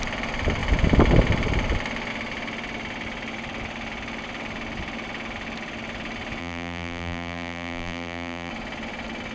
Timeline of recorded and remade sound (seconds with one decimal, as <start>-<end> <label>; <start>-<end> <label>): 0.0-6.4 recorded; 6.4-8.5 remade; 8.5-9.3 recorded